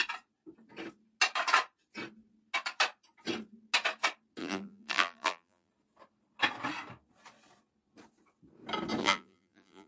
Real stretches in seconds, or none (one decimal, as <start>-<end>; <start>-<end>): 0.0-4.4; 5.7-9.0